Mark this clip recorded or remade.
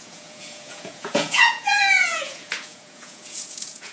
remade